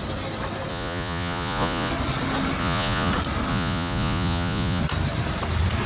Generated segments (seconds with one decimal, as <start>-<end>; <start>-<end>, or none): 0.7-1.9; 2.6-3.1; 3.5-4.8